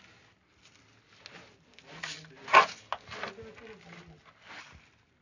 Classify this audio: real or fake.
real